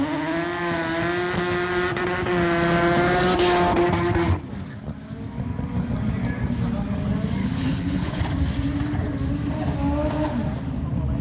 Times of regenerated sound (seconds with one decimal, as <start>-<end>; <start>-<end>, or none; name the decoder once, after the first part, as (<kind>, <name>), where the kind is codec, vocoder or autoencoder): 7.4-8.2 (codec, HILCodec)